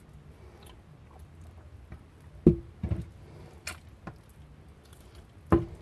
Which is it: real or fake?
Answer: real